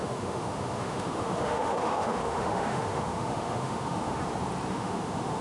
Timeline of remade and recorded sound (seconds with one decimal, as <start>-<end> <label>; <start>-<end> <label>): 0.0-4.2 remade; 4.2-4.7 recorded; 4.7-5.4 remade